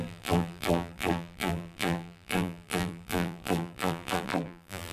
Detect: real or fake fake